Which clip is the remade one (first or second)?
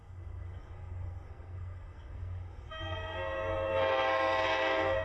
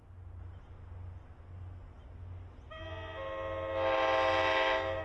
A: first